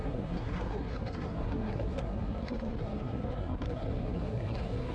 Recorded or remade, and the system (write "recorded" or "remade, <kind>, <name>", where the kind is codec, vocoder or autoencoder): remade, codec, SNAC